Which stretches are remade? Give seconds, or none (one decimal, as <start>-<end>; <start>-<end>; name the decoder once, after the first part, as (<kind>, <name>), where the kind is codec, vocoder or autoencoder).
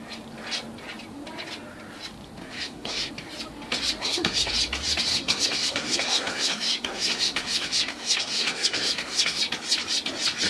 2.4-3.1 (codec, SNAC); 4.0-4.5; 5.1-9.4